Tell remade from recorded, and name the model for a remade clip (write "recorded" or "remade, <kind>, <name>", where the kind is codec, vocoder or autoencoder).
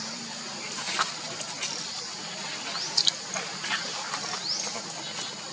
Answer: recorded